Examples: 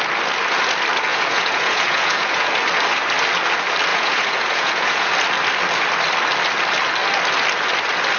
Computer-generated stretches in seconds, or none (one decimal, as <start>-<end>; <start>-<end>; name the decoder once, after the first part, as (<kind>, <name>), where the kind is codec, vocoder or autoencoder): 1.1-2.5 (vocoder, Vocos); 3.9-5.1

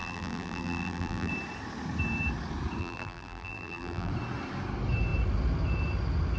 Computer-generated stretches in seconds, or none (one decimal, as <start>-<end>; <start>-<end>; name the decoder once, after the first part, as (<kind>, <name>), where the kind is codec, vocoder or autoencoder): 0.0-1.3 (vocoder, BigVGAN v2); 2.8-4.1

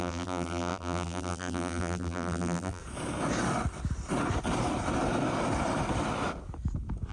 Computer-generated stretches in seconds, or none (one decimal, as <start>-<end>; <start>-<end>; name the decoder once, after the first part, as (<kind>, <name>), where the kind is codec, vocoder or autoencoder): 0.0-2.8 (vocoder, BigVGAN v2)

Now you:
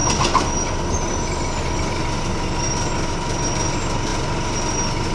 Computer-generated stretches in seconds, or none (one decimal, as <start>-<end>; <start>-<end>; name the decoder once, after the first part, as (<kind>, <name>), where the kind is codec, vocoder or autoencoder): none